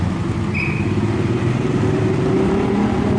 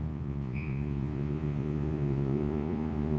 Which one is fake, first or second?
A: second